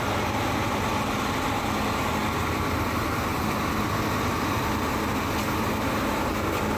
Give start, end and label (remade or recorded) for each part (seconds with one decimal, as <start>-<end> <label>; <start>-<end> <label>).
0.0-6.8 recorded